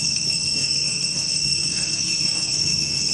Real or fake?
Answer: fake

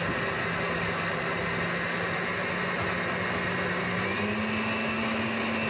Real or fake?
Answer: real